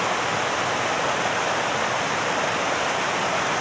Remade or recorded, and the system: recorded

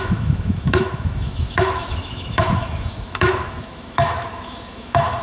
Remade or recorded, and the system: remade, autoencoder, DAC-VAE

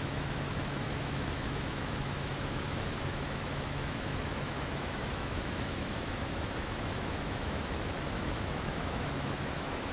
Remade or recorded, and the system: remade, autoencoder, DAC-VAE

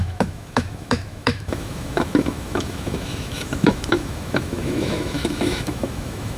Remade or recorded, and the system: remade, autoencoder, DAC-VAE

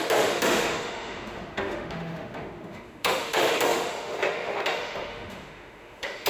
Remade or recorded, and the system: remade, autoencoder, DAC-VAE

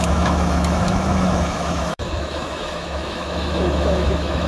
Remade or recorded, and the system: remade, autoencoder, DAC-VAE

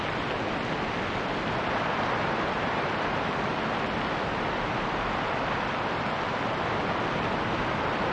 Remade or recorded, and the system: recorded